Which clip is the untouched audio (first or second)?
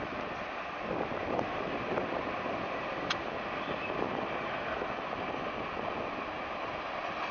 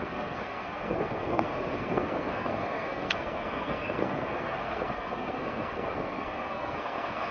first